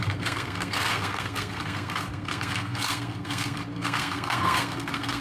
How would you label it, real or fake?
fake